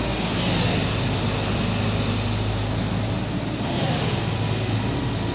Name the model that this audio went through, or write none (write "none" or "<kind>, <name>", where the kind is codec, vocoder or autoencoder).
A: none